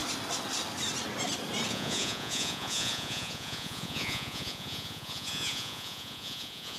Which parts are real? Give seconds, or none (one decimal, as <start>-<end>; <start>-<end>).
0.0-1.7